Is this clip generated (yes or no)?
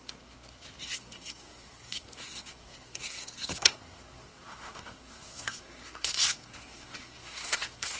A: yes